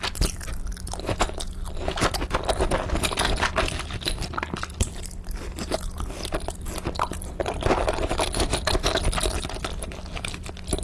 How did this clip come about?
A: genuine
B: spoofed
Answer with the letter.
A